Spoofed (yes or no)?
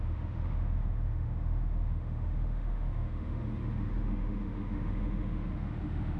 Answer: yes